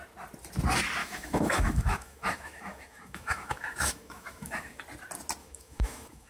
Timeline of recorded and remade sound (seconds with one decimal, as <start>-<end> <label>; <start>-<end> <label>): 0.0-1.0 recorded; 1.0-4.8 remade; 4.8-5.4 recorded; 5.4-6.3 remade